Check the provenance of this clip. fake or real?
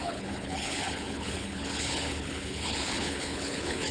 fake